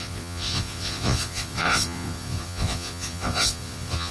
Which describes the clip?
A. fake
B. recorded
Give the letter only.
A